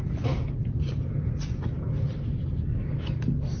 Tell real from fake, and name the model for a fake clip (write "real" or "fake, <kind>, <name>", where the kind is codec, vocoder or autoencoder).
real